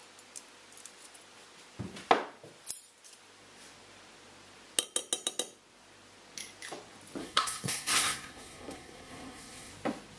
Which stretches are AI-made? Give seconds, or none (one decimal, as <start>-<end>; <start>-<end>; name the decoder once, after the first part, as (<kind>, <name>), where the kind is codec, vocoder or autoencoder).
7.2-9.7 (codec, SNAC)